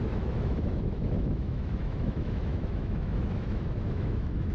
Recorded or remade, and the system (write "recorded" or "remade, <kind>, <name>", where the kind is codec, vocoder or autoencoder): remade, autoencoder, DAC-VAE